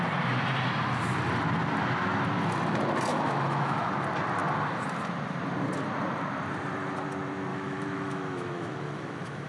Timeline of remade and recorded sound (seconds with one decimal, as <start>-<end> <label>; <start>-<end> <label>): 0.0-3.1 recorded; 3.1-3.9 remade; 3.9-7.5 recorded; 7.5-9.5 remade